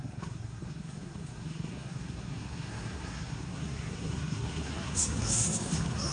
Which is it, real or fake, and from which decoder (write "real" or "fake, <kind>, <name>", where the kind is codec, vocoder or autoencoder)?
fake, codec, SNAC